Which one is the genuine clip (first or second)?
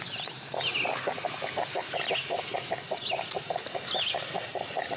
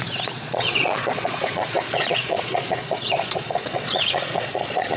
first